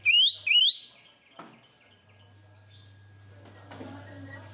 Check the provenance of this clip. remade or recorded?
recorded